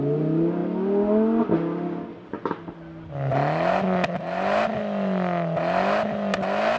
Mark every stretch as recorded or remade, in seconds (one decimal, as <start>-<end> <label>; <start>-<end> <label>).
0.0-6.8 recorded